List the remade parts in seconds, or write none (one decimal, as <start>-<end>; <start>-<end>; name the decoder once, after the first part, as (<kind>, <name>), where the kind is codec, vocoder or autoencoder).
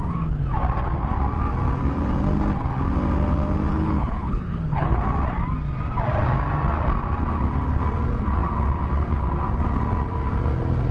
3.7-5.0 (codec, HILCodec)